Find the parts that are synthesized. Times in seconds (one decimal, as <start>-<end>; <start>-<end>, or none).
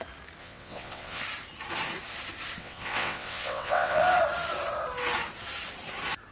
0.4-1.2; 2.6-4.0